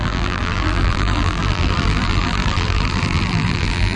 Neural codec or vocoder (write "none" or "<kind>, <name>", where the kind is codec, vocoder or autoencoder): vocoder, BigVGAN v2